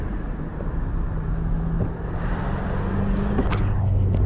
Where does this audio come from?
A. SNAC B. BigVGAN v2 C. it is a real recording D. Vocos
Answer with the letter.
C